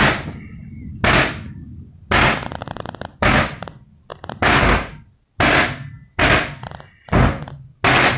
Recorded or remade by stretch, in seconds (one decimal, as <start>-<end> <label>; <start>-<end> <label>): 0.0-8.2 recorded